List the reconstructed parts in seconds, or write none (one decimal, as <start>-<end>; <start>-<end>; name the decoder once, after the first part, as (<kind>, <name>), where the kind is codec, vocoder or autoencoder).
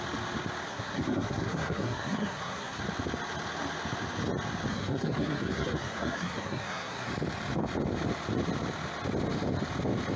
0.7-2.8 (codec, SNAC); 4.7-7.1